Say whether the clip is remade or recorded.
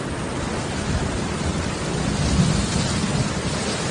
recorded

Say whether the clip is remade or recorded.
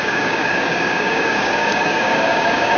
remade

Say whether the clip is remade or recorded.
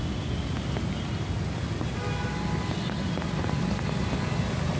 recorded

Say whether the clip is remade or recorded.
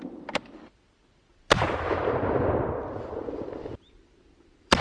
remade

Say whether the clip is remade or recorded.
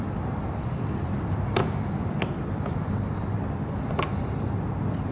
recorded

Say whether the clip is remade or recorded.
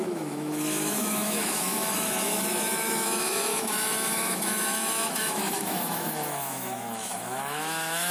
remade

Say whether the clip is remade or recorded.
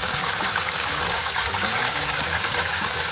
remade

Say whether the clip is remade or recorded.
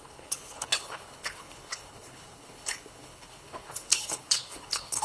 remade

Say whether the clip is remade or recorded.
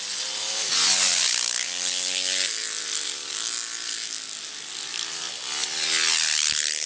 recorded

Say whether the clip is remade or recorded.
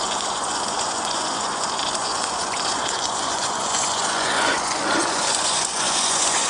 remade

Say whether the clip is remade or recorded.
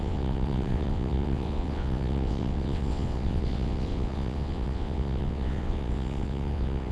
remade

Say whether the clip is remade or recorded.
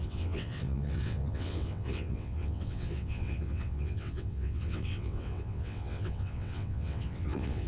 remade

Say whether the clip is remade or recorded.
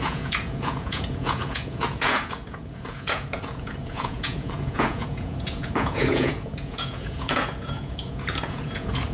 remade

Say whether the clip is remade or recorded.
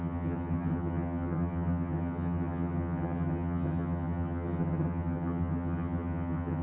remade